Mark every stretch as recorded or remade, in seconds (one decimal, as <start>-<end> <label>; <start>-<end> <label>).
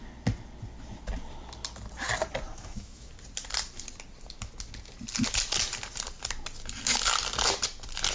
0.0-2.5 recorded; 2.5-3.1 remade; 3.1-8.1 recorded